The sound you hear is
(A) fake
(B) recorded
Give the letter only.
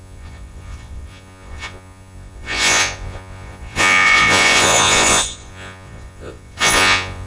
A